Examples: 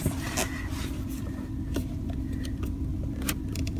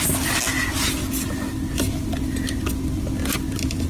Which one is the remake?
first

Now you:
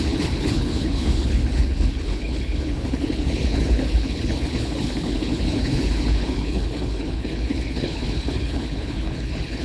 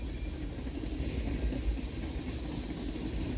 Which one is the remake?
first